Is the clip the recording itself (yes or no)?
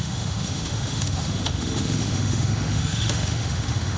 no